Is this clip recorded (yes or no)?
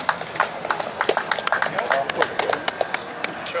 yes